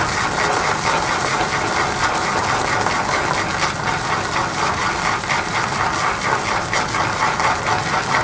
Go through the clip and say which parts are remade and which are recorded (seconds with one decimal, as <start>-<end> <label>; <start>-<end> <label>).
0.0-8.2 recorded